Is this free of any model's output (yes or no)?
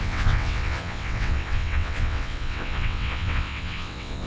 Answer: no